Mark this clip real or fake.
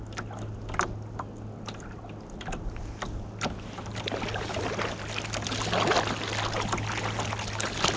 real